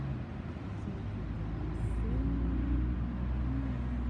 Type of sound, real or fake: real